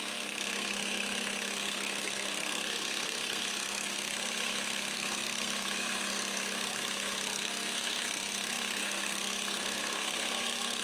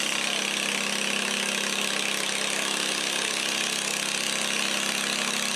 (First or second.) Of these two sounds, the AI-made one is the first